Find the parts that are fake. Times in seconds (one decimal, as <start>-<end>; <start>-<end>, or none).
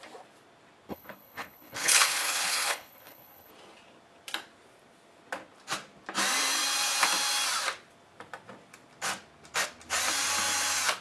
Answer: 0.9-3.5